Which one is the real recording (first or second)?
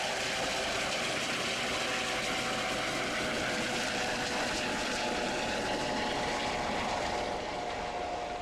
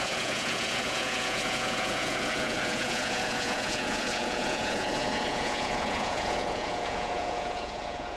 first